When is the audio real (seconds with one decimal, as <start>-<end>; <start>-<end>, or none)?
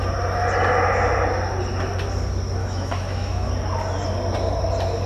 0.0-2.6; 3.5-5.1